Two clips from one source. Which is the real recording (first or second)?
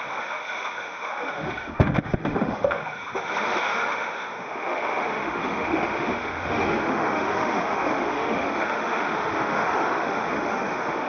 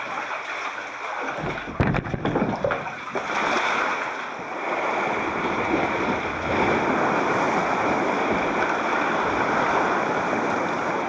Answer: second